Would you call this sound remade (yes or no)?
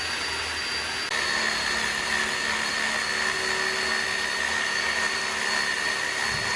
no